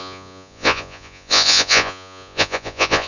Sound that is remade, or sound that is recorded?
remade